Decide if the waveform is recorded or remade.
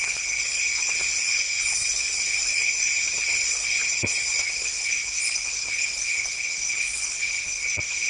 remade